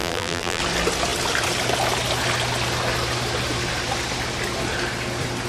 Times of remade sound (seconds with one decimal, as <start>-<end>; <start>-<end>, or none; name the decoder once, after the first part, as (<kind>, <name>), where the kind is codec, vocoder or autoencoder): 0.0-0.6 (vocoder, BigVGAN v2)